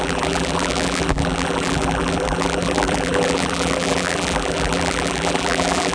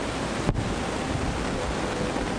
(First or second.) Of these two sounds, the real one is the second